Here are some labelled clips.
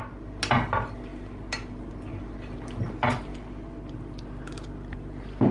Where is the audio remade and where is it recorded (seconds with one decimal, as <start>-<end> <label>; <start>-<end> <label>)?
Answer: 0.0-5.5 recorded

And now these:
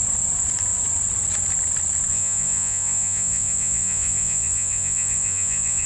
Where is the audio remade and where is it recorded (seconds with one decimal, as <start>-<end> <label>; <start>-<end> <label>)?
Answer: 0.0-2.1 recorded; 2.1-5.9 remade

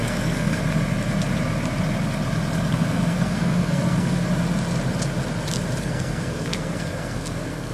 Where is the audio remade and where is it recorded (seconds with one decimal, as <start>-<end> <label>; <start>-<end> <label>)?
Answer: 0.0-0.6 remade; 0.6-2.7 recorded; 2.7-4.3 remade; 4.3-5.8 recorded; 5.8-7.7 remade

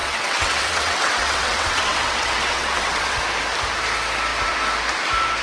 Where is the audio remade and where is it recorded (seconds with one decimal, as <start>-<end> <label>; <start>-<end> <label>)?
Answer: 0.0-3.2 remade; 3.2-5.4 recorded

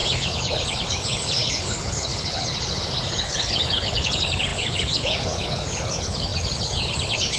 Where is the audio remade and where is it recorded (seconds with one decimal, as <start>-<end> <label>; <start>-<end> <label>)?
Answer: 0.0-7.4 remade

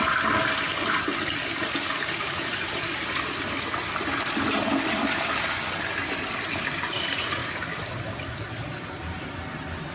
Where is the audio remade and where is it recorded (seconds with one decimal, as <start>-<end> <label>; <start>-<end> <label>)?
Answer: 0.0-9.9 recorded

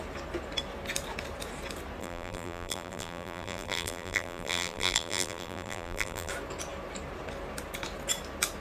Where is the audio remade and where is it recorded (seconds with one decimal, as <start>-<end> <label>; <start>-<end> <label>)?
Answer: 0.0-2.0 recorded; 2.0-6.3 remade; 6.3-8.6 recorded